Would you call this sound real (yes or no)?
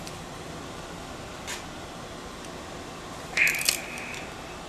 yes